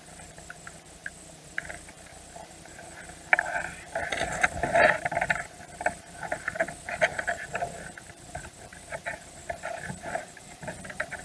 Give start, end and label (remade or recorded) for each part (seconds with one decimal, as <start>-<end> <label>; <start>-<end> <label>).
0.0-4.1 remade; 4.1-6.5 recorded; 6.5-11.2 remade